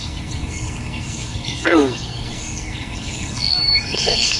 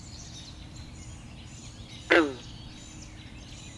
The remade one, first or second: first